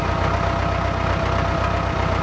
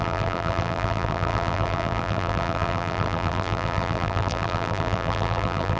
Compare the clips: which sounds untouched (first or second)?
first